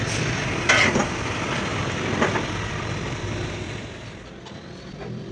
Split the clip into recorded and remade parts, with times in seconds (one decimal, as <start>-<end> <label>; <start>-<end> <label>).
0.0-1.7 recorded; 1.7-5.3 remade